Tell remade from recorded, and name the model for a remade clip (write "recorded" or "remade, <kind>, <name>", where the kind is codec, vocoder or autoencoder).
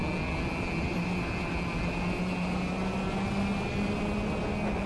recorded